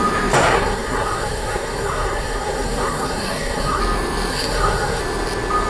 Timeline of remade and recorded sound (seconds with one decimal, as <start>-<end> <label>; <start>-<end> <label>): 0.0-0.4 recorded; 0.4-3.8 remade; 3.8-4.3 recorded; 4.3-5.0 remade; 5.0-5.7 recorded